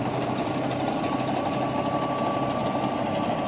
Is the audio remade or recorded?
recorded